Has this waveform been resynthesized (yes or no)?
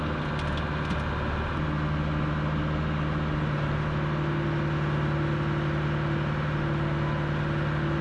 no